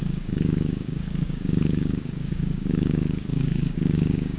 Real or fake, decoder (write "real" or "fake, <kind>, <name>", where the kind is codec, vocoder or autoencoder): fake, codec, DAC